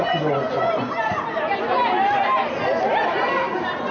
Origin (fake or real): real